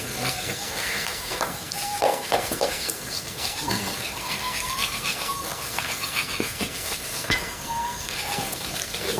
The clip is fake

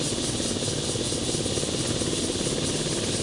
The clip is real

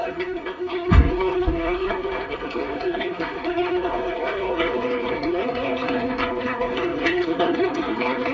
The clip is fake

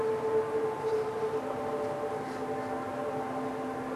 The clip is real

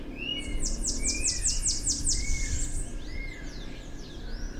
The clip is real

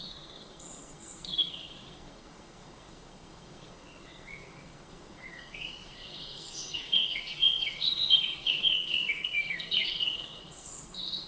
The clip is fake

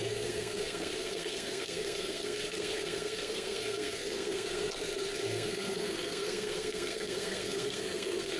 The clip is fake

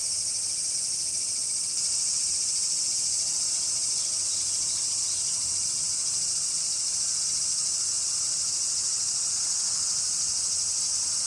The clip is real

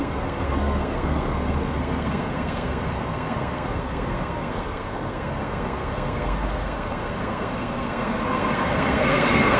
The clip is fake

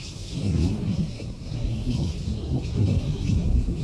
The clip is fake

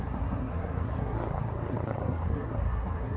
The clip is fake